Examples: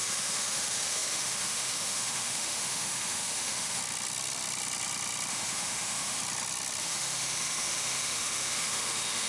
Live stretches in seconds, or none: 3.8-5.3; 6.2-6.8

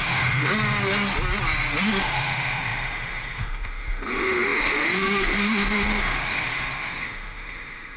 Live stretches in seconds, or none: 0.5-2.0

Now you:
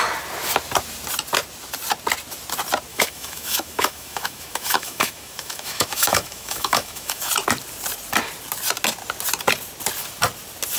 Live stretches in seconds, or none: 0.0-2.9; 7.3-10.8